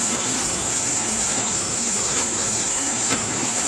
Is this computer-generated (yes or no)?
yes